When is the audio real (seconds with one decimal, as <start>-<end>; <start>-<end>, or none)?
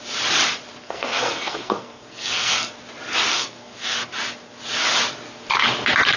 0.0-0.8; 2.7-3.3; 4.0-6.2